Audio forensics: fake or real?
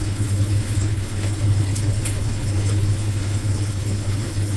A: fake